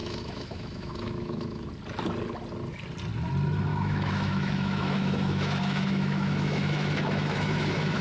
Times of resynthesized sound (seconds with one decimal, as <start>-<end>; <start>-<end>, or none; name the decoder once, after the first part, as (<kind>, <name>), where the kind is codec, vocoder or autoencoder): 0.0-1.7 (autoencoder, DAC-VAE); 3.7-8.0